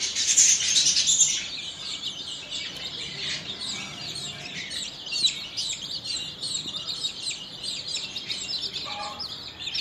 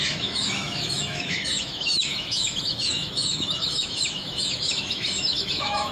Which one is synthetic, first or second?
second